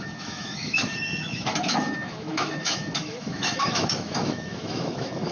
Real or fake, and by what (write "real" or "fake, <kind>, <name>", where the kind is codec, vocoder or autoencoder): fake, autoencoder, DAC-VAE